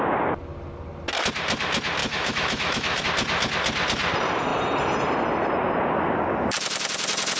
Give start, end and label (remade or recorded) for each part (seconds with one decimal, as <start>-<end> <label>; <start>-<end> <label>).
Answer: 0.0-2.0 recorded; 2.0-3.0 remade; 3.0-7.4 recorded